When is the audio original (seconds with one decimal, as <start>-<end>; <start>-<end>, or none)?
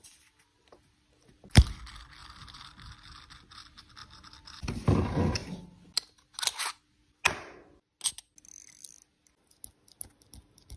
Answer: 1.8-10.8